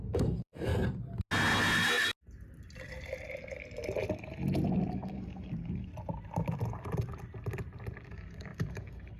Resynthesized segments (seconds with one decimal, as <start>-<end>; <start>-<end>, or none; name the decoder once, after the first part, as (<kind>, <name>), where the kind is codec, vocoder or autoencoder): 0.0-0.7 (codec, DAC); 4.9-5.9; 8.1-9.2